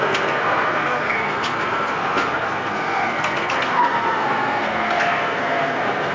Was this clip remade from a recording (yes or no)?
yes